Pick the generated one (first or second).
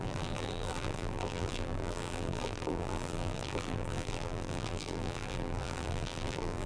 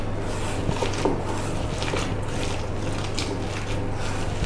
first